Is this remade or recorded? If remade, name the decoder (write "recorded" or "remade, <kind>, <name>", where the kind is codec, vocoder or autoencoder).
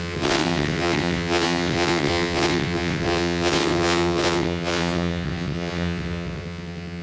remade, vocoder, WaveNeXt